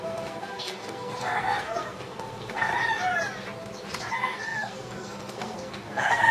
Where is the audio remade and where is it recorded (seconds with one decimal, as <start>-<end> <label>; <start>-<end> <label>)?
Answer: 0.0-2.7 remade; 2.7-4.1 recorded; 4.1-6.3 remade